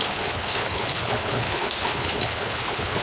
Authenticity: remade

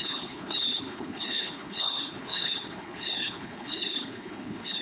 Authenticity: remade